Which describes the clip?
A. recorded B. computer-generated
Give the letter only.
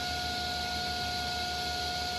A